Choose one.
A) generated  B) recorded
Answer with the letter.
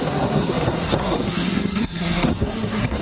A